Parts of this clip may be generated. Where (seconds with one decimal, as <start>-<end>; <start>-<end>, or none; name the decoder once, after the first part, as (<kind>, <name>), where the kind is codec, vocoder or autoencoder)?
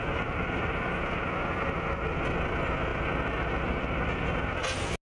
none